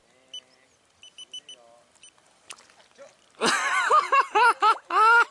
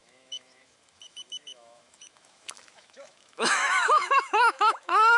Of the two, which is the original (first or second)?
first